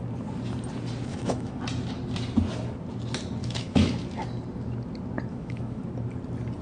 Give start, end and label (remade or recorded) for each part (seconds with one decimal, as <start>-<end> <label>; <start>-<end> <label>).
0.0-1.1 recorded; 1.1-1.6 remade; 1.6-3.4 recorded; 3.4-4.0 remade; 4.0-5.3 recorded; 5.3-5.8 remade; 5.8-6.6 recorded